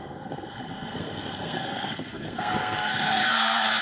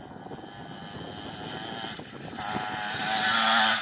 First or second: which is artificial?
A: first